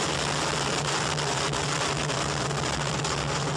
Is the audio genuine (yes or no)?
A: yes